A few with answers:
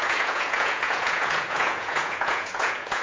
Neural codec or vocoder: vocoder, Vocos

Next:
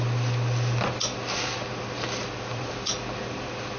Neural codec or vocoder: none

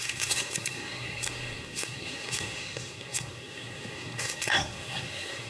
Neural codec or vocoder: codec, SNAC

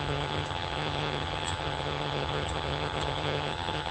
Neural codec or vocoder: vocoder, HiFi-GAN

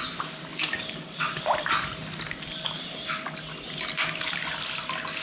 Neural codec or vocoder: none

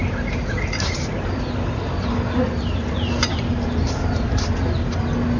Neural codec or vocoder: none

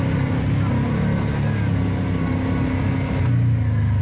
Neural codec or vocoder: none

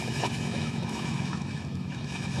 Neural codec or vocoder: autoencoder, DAC-VAE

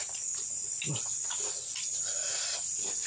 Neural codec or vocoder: none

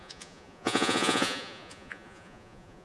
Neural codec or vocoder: vocoder, Vocos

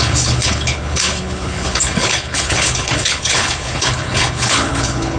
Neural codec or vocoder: codec, HILCodec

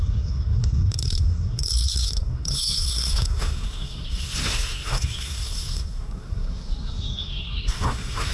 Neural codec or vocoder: codec, SNAC